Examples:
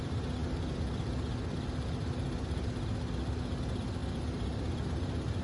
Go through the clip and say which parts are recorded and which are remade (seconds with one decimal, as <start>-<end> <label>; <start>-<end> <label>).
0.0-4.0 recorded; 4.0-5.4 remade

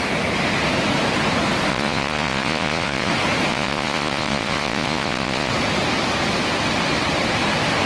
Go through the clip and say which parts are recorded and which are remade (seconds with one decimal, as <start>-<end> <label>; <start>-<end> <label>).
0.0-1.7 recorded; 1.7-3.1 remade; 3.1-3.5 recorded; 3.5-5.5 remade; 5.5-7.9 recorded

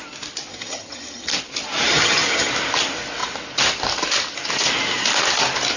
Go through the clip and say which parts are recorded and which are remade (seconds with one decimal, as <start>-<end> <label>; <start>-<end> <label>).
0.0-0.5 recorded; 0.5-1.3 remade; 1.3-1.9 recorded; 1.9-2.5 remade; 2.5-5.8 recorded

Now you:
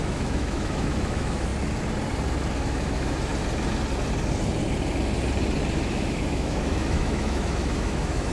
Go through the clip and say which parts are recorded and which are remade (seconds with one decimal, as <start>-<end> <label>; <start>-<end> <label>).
0.0-1.5 remade; 1.5-2.6 recorded; 2.6-3.3 remade; 3.3-5.8 recorded; 5.8-8.3 remade